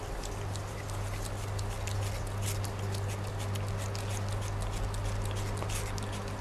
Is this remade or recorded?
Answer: recorded